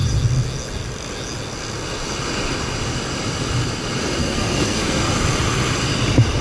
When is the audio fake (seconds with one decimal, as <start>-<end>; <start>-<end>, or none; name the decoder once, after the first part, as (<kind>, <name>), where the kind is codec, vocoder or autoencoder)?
4.2-5.1 (codec, SNAC)